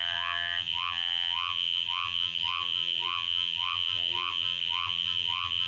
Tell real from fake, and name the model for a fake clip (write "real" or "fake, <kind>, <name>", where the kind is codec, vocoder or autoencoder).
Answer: fake, vocoder, BigVGAN v2